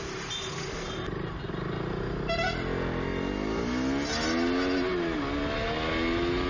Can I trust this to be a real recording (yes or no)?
yes